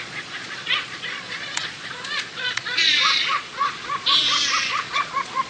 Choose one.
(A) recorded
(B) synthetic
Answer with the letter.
B